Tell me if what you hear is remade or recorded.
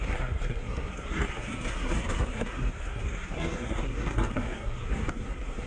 remade